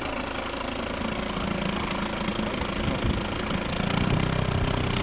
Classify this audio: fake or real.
real